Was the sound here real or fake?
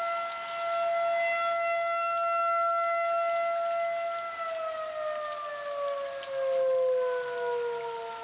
real